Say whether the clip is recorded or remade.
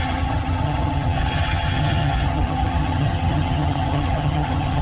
remade